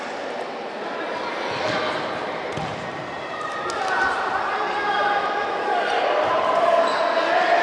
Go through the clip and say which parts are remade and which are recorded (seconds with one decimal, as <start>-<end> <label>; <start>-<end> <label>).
0.0-2.7 recorded; 2.7-6.7 remade; 6.7-7.6 recorded